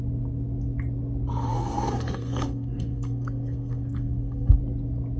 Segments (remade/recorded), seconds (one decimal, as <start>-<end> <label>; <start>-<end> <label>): 0.0-1.5 recorded; 1.5-4.6 remade; 4.6-5.2 recorded